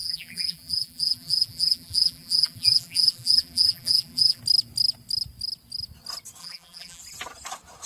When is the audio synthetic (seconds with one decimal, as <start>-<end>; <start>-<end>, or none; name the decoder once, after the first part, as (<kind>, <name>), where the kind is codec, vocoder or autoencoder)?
0.0-4.4 (vocoder, BigVGAN v2); 6.4-7.0